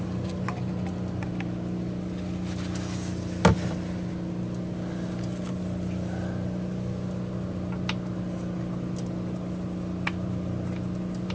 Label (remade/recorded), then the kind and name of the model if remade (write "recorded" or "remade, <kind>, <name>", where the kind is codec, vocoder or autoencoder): recorded